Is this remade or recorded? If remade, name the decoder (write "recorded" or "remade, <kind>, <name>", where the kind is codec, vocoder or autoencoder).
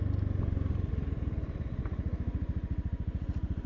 recorded